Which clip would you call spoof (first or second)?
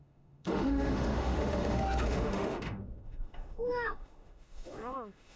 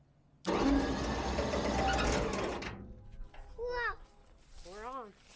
first